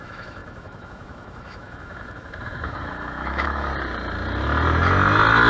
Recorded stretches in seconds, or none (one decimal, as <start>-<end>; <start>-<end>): 3.7-5.5